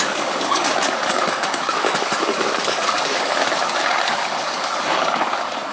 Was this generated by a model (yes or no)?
yes